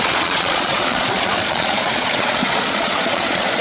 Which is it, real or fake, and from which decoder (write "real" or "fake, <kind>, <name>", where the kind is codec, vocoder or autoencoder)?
fake, vocoder, Vocos